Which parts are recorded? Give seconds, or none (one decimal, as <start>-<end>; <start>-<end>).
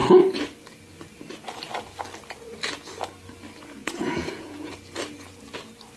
0.0-3.8; 4.7-6.0